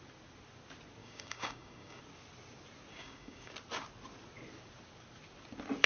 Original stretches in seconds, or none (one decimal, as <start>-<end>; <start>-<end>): 0.0-1.0; 2.0-2.9; 3.5-5.9